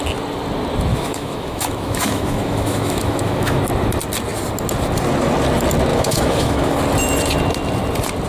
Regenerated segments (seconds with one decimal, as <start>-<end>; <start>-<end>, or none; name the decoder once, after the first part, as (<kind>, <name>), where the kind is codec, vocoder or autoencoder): 0.9-3.6 (autoencoder, DAC-VAE); 5.9-6.8